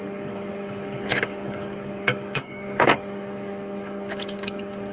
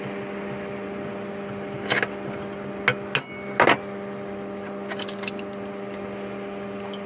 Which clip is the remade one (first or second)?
first